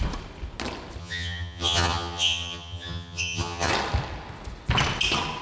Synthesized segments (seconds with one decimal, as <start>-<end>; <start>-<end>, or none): 1.0-3.7